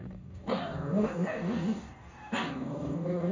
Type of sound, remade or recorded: remade